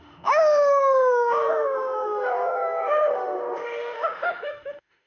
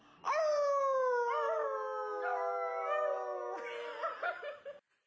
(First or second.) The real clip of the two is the second